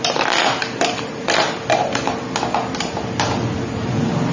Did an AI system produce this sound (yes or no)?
no